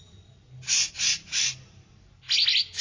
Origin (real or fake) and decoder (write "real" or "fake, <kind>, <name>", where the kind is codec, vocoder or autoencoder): real